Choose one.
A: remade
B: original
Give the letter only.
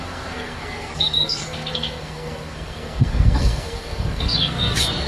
A